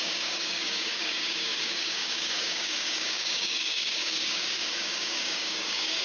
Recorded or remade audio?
remade